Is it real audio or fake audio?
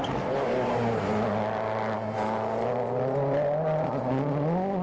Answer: real